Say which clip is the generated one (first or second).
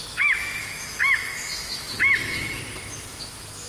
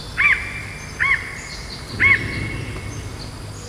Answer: first